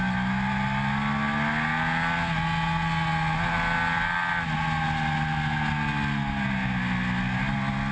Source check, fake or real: real